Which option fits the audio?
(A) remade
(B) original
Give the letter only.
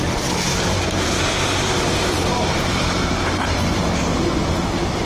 A